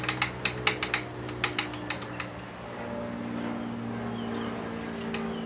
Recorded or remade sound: recorded